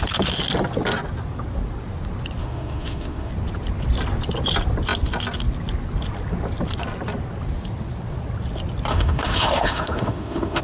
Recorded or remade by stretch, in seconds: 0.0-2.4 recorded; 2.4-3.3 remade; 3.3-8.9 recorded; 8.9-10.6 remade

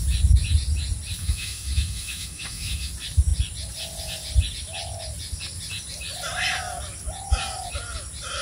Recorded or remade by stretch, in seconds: 0.0-1.2 recorded; 1.2-2.9 remade; 2.9-8.4 recorded

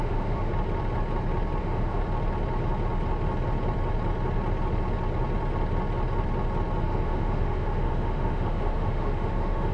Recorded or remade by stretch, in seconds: 0.0-0.5 remade; 0.5-1.6 recorded; 1.6-2.0 remade; 2.0-6.8 recorded; 6.8-9.7 remade

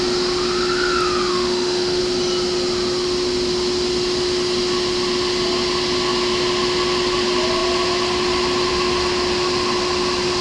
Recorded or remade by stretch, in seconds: 0.0-1.3 recorded; 1.3-2.0 remade; 2.0-10.4 recorded

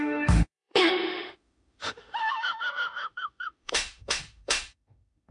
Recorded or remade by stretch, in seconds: 0.0-5.3 remade